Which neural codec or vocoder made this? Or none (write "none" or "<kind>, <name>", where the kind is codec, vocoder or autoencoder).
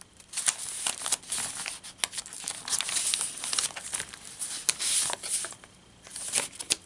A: none